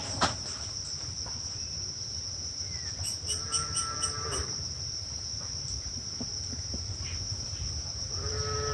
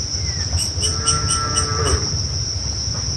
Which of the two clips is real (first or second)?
second